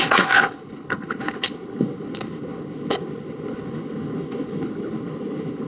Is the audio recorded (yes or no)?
no